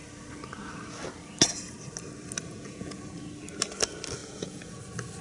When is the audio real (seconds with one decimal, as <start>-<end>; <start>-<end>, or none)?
0.0-2.5; 3.0-4.2; 4.8-5.2

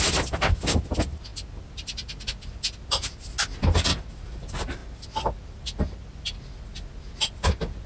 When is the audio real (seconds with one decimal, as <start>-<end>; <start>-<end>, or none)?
0.0-7.9